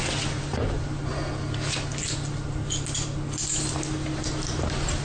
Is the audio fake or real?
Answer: real